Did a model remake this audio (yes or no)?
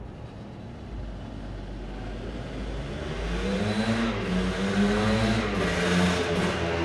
no